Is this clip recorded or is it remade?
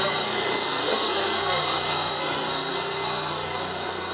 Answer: remade